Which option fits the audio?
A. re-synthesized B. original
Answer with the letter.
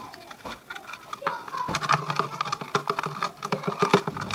B